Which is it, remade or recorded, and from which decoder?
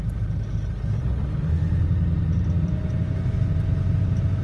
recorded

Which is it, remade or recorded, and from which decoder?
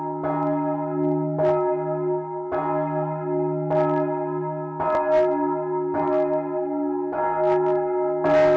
recorded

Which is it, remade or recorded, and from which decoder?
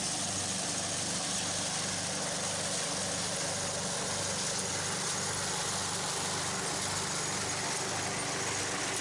recorded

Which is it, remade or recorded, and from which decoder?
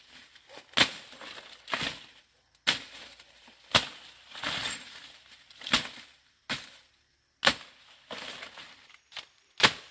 recorded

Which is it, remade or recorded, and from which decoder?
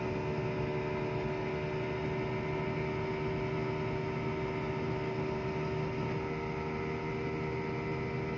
recorded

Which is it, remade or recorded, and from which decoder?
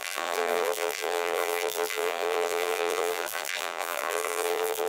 remade, vocoder, BigVGAN v2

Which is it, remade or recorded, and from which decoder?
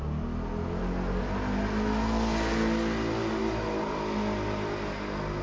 recorded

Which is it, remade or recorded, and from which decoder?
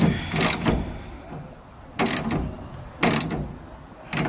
recorded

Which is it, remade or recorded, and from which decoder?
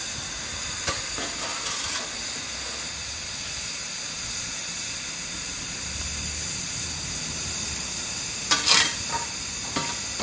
recorded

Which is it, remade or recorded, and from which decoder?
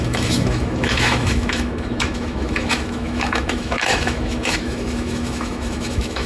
remade, autoencoder, DAC-VAE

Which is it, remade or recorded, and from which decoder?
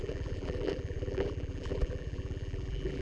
remade, vocoder, BigVGAN v2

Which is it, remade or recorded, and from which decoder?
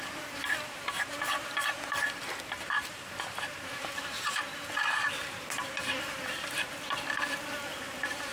remade, vocoder, BigVGAN v2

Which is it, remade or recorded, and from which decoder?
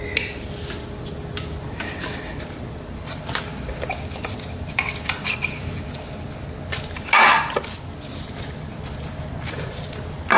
recorded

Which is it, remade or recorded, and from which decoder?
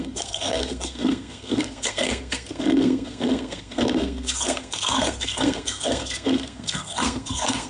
remade, codec, SNAC